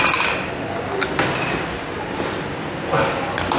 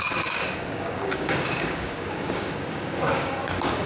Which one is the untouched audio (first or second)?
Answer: first